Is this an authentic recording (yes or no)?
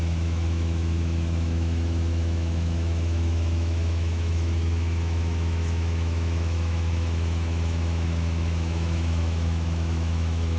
no